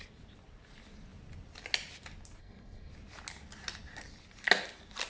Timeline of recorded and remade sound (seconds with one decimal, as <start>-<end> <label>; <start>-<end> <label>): 0.0-2.4 recorded; 2.4-2.9 remade; 2.9-5.1 recorded